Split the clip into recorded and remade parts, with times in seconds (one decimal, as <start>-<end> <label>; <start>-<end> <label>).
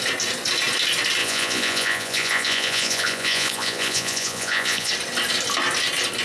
0.0-1.2 recorded; 1.2-4.9 remade; 4.9-6.2 recorded